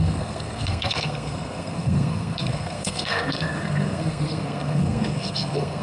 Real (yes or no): no